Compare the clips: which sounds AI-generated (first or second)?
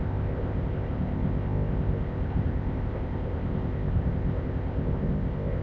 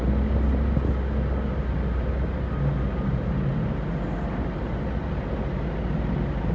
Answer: first